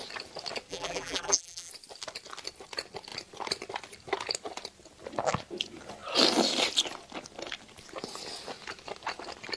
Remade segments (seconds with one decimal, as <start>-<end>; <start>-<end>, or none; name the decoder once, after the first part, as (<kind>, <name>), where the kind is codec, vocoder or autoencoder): 0.7-1.7 (vocoder, BigVGAN v2)

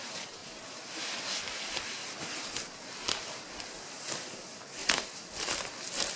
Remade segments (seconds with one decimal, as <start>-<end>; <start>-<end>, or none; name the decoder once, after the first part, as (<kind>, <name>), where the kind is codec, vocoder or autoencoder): 4.8-5.6 (vocoder, BigVGAN v2)

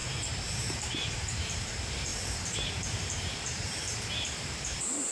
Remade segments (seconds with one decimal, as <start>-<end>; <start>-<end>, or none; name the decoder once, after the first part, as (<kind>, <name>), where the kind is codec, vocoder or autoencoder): 0.0-5.1 (vocoder, BigVGAN v2)

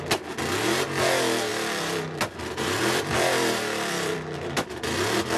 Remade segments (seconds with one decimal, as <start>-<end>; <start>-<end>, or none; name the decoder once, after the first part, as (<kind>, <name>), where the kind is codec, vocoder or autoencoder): 1.5-4.7 (vocoder, BigVGAN v2)